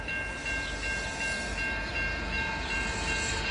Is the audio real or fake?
real